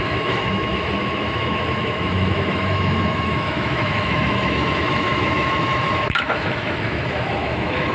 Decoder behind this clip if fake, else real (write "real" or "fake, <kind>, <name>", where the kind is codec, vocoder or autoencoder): fake, autoencoder, DAC-VAE